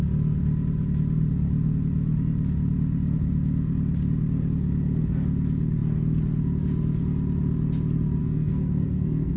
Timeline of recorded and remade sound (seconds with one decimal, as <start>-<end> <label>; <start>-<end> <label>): 0.0-8.2 recorded; 8.2-9.4 remade